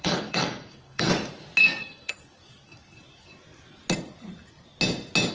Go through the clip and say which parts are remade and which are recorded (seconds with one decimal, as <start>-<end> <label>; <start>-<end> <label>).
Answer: 0.0-1.1 remade; 1.1-1.6 recorded; 1.6-2.2 remade; 2.2-5.3 recorded